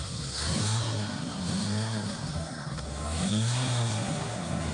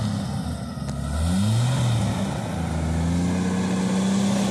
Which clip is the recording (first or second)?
second